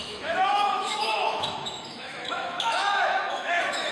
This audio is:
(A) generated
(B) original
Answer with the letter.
A